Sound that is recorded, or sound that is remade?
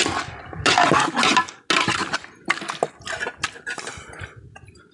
recorded